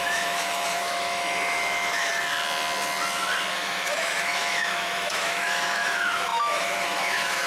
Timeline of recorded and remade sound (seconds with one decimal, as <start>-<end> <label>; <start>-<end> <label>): 0.0-2.1 remade; 2.1-3.5 recorded; 3.5-7.5 remade